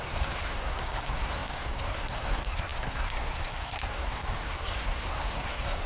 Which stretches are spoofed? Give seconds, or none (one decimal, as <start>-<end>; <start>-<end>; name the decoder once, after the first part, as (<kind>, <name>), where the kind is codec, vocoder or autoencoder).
0.0-5.9 (codec, SNAC)